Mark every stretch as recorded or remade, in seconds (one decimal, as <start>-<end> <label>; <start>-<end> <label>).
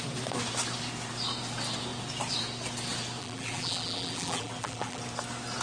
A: 0.0-3.2 recorded; 3.2-5.0 remade; 5.0-5.6 recorded